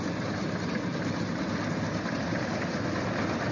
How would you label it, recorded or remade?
recorded